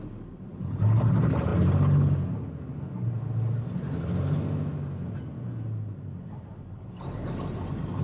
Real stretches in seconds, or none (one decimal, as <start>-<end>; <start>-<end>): 0.0-8.0

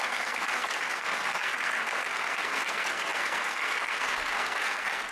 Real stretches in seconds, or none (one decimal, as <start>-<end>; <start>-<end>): none